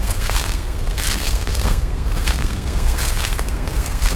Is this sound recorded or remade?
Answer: remade